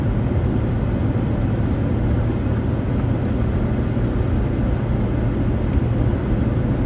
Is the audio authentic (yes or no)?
yes